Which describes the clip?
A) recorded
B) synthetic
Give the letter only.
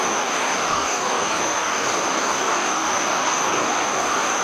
B